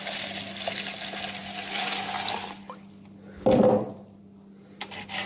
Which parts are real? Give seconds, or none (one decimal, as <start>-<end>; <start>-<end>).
0.0-5.3